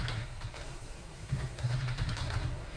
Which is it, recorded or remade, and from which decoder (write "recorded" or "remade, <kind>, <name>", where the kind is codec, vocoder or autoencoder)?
remade, codec, SNAC